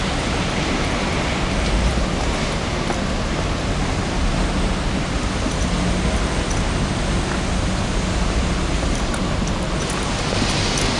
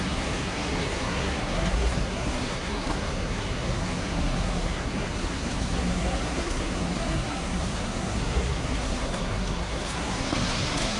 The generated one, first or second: second